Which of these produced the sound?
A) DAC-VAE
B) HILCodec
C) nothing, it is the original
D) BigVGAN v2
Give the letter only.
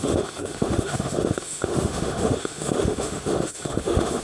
A